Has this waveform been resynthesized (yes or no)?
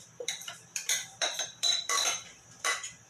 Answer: yes